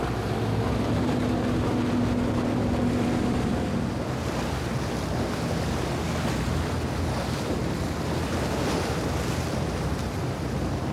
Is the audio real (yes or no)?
yes